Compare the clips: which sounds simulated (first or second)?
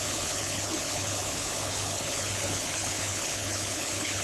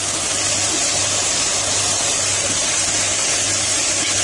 first